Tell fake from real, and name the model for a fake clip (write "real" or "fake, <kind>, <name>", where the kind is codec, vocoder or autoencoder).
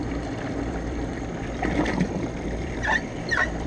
fake, vocoder, BigVGAN v2